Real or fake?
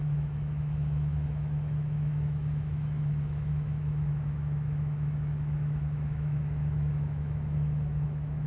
fake